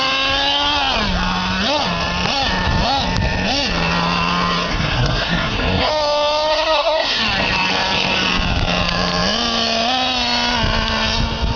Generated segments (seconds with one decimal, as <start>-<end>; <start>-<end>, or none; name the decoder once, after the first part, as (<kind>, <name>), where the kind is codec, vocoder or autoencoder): 4.7-5.9 (codec, SNAC); 6.5-7.2